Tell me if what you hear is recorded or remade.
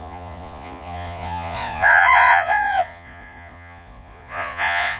remade